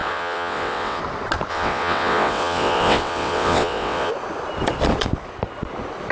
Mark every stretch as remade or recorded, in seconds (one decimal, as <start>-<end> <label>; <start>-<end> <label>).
0.0-1.0 remade; 1.0-1.5 recorded; 1.5-4.1 remade; 4.1-6.1 recorded